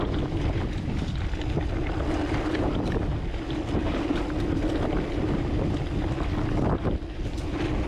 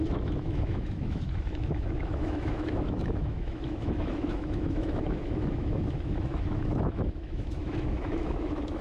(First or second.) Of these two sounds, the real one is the first